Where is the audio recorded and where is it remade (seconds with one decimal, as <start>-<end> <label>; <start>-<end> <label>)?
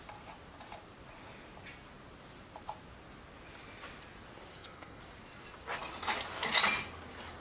0.0-4.5 recorded; 4.5-5.0 remade; 5.0-7.4 recorded